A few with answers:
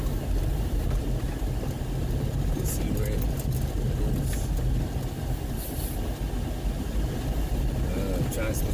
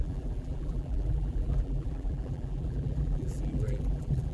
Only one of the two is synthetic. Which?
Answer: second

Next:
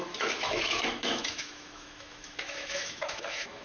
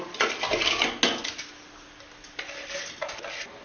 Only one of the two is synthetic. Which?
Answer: first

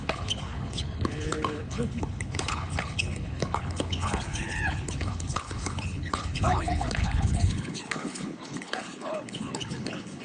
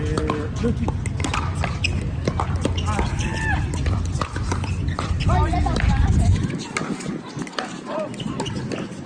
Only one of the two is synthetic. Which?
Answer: first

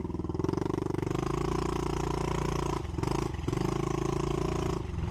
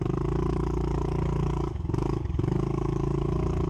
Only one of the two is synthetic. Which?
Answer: second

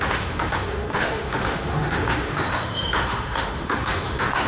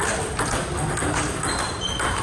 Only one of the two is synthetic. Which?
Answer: first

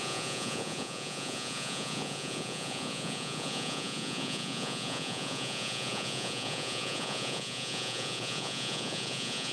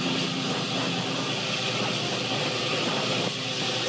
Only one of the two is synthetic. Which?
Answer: first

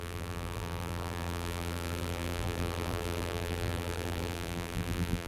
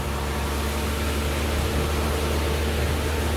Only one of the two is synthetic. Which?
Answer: first